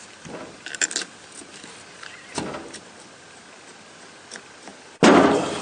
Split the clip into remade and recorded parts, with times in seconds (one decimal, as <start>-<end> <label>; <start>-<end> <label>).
0.0-5.6 recorded